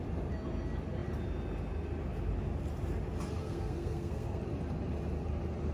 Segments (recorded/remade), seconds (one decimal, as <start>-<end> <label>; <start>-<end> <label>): 0.0-3.4 recorded; 3.4-4.4 remade; 4.4-5.7 recorded